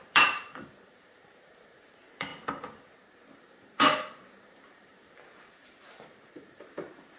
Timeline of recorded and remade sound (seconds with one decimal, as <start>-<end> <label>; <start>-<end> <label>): 0.0-2.3 remade; 2.3-3.4 recorded; 3.4-7.2 remade